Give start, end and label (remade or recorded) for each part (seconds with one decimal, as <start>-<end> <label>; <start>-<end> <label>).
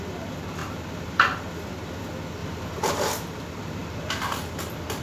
0.0-0.6 recorded; 0.6-1.5 remade; 1.5-2.4 recorded; 2.4-2.9 remade; 2.9-3.8 recorded; 3.8-4.4 remade; 4.4-5.0 recorded